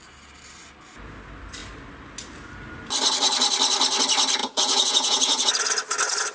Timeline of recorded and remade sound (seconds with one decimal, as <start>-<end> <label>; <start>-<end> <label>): 0.0-4.4 recorded; 4.4-5.5 remade; 5.5-6.3 recorded